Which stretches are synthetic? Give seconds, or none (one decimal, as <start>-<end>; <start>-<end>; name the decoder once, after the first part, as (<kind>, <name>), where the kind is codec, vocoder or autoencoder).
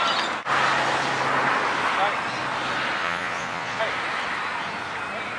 3.0-3.8 (vocoder, Vocos)